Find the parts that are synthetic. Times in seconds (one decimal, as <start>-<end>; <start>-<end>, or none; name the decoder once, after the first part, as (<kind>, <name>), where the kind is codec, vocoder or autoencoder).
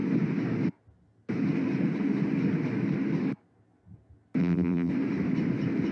4.4-4.9 (vocoder, BigVGAN v2)